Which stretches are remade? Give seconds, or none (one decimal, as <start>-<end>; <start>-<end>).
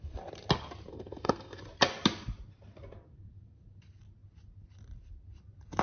0.9-1.6